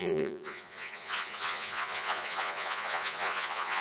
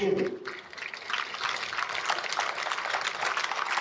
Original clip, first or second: second